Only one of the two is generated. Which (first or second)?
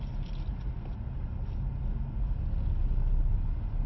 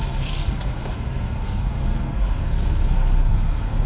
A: second